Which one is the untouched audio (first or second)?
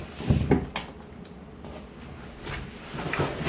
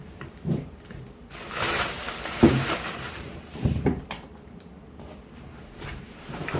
first